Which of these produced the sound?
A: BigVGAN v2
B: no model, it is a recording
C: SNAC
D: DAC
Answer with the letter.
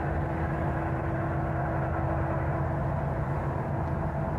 B